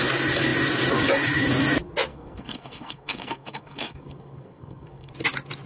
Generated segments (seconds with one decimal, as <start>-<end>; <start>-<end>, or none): 2.1-5.1

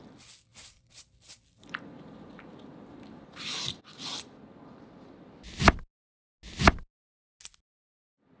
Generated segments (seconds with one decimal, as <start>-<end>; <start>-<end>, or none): 0.5-3.8

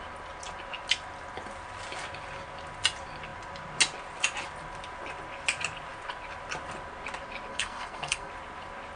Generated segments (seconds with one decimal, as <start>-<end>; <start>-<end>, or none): 7.5-8.3

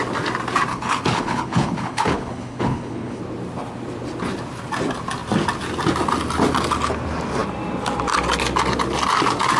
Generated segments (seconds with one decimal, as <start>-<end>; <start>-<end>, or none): 0.7-3.2